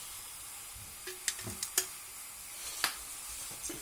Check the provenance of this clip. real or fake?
real